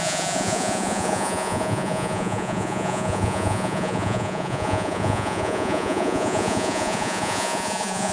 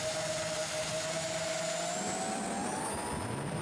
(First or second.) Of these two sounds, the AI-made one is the first